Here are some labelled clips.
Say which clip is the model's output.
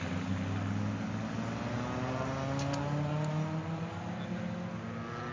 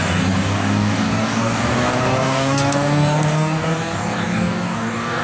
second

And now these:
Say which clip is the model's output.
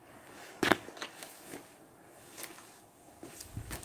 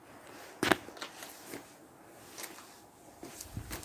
first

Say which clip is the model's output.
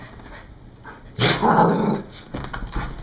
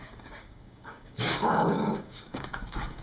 second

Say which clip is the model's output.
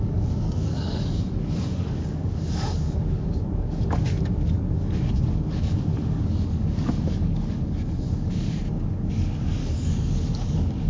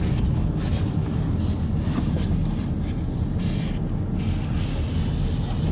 first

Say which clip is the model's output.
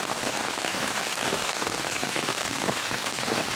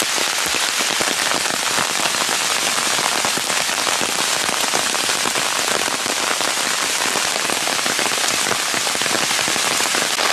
first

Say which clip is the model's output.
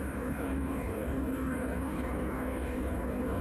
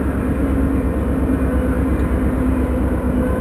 first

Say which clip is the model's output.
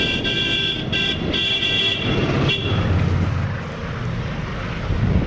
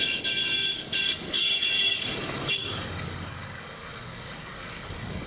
second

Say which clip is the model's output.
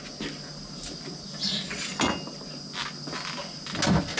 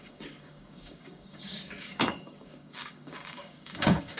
second